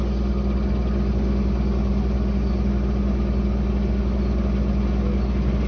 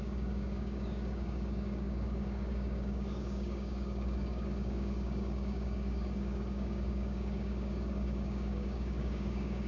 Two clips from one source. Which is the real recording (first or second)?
first